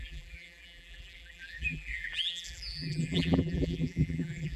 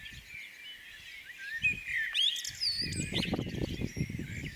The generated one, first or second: first